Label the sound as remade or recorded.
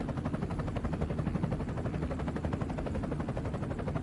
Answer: recorded